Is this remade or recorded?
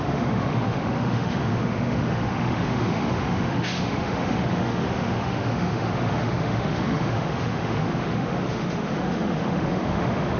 remade